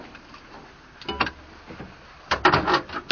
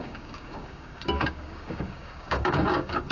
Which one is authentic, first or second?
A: first